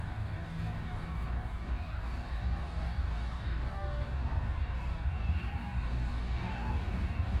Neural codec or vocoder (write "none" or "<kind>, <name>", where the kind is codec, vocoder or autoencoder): codec, DAC